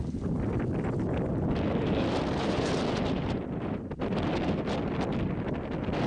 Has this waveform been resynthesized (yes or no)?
no